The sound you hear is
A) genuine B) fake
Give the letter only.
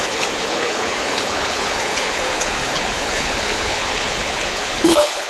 B